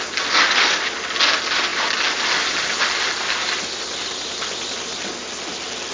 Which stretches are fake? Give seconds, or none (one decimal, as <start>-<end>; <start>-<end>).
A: none

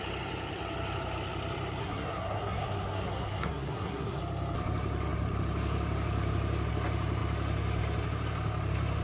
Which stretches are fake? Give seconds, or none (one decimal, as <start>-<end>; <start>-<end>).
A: 1.8-4.2

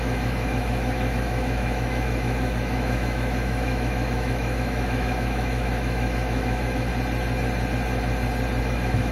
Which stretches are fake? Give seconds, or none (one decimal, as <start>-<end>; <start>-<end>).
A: 0.0-6.9; 8.6-9.1

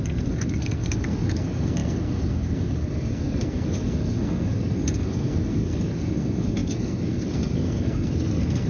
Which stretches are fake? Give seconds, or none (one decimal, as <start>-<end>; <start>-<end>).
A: 0.0-8.7